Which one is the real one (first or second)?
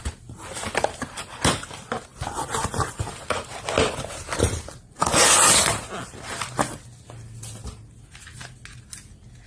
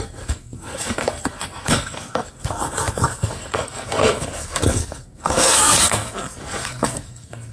first